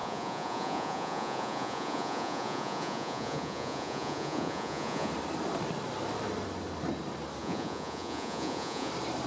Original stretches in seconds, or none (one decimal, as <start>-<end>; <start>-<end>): 5.1-7.4; 8.9-9.3